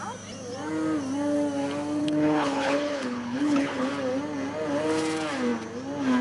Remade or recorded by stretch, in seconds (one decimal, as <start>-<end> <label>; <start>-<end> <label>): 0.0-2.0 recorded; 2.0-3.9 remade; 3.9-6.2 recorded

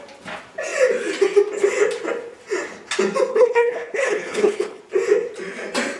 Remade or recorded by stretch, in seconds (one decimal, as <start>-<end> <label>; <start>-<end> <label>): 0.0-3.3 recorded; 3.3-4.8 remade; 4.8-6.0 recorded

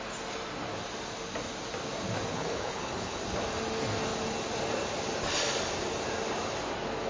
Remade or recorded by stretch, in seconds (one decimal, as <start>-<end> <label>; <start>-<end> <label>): 0.0-2.3 recorded; 2.3-3.2 remade; 3.2-7.1 recorded

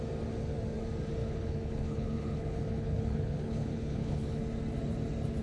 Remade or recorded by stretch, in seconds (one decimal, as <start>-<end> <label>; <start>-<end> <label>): 0.0-1.2 recorded; 1.2-4.4 remade; 4.4-5.4 recorded

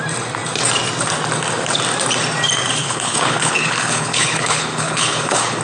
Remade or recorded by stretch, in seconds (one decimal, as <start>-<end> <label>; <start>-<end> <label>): 0.0-2.8 recorded; 2.8-5.6 remade

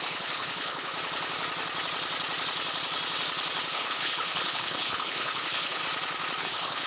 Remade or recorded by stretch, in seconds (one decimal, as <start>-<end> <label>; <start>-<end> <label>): 0.0-0.9 remade; 0.9-3.7 recorded; 3.7-5.8 remade; 5.8-6.4 recorded; 6.4-6.9 remade

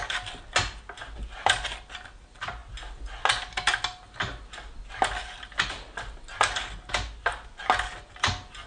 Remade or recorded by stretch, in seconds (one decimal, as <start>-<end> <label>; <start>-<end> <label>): 0.0-8.7 recorded

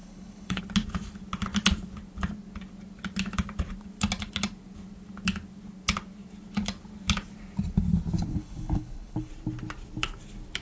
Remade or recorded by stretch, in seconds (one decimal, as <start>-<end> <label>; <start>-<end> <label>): 0.0-0.6 remade; 0.6-8.3 recorded; 8.3-9.3 remade; 9.3-10.6 recorded